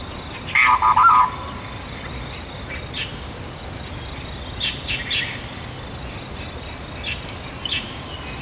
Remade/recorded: recorded